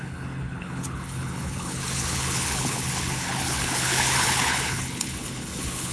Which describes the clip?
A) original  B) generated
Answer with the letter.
B